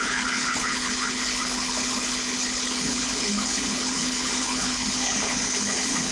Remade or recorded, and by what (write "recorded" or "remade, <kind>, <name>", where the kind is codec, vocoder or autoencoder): remade, codec, HILCodec